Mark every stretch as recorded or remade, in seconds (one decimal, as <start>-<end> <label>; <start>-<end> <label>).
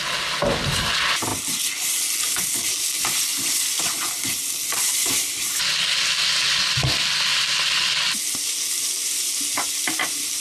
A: 0.0-0.4 recorded; 0.4-0.9 remade; 0.9-10.4 recorded